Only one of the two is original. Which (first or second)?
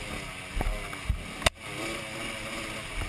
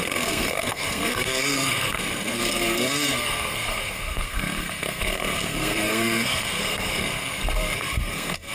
first